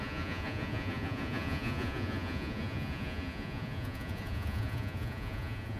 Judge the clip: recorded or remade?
remade